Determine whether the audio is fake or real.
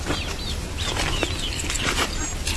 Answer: real